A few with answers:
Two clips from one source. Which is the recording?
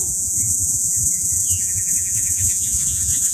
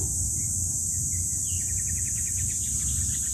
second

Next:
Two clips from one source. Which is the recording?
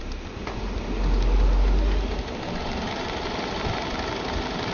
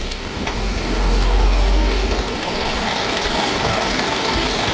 first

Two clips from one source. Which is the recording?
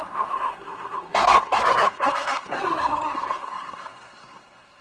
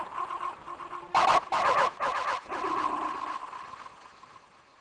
second